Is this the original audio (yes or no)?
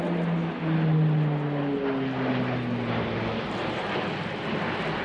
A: yes